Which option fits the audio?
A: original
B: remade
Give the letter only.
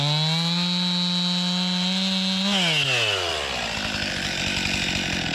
A